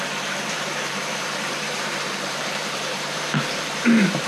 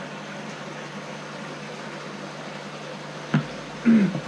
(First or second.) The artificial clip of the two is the first